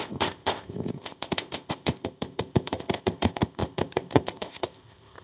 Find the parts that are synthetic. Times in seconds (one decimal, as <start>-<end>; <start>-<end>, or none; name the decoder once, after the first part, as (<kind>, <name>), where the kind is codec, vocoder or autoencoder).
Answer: 0.0-5.2 (codec, ZipCodec)